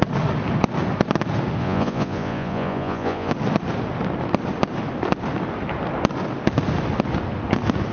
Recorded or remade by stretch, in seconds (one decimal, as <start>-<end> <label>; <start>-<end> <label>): 0.0-1.6 recorded; 1.6-3.3 remade; 3.3-7.9 recorded